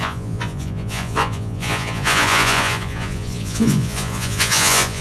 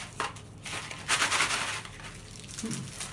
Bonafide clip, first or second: second